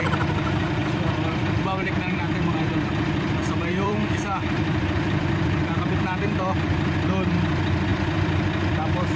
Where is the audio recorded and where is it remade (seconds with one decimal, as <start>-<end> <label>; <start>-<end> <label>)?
0.0-0.8 recorded; 0.8-2.7 remade; 2.7-3.4 recorded; 3.4-6.4 remade; 6.4-7.9 recorded; 7.9-9.2 remade